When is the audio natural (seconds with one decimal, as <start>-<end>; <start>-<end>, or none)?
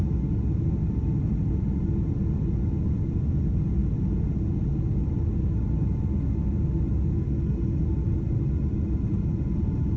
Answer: 0.0-10.0